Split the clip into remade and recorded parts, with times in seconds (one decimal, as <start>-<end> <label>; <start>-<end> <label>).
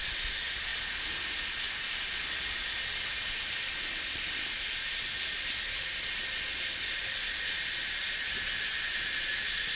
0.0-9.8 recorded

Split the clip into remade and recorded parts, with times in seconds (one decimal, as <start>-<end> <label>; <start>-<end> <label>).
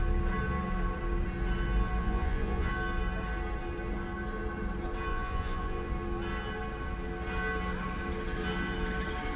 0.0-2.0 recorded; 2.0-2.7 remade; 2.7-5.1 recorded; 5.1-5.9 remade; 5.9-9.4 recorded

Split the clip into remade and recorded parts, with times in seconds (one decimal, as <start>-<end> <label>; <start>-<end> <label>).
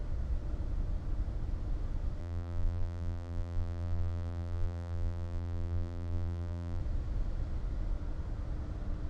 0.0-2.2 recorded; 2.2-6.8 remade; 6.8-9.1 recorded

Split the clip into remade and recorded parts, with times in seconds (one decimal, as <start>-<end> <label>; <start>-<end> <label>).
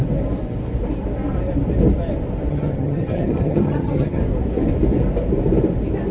0.0-2.5 recorded; 2.5-4.2 remade; 4.2-6.1 recorded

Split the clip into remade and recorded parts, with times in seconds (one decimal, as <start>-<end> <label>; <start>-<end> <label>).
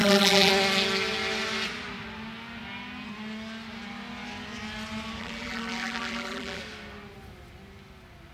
0.0-0.5 remade; 0.5-5.2 recorded; 5.2-6.6 remade; 6.6-8.3 recorded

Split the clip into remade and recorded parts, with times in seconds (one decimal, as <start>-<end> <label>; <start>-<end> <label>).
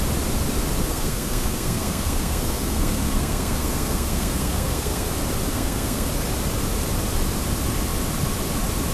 0.0-0.8 recorded; 0.8-5.1 remade; 5.1-5.5 recorded; 5.5-6.1 remade; 6.1-8.9 recorded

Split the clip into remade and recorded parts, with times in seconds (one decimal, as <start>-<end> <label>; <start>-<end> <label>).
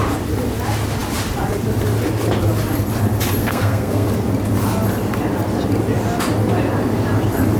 0.0-3.4 recorded; 3.4-4.1 remade; 4.1-7.6 recorded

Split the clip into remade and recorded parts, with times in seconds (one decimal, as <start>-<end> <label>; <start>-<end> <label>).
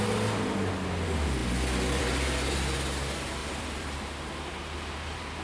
0.0-3.4 recorded; 3.4-4.0 remade; 4.0-5.4 recorded